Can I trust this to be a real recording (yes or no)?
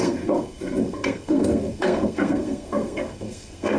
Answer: no